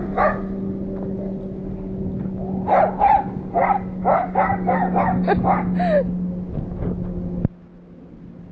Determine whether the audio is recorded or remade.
recorded